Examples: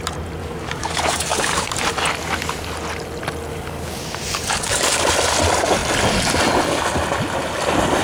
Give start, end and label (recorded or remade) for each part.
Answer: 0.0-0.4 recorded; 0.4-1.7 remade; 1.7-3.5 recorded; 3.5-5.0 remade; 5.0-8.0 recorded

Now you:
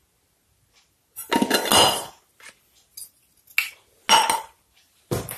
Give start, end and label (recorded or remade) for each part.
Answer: 0.0-5.4 recorded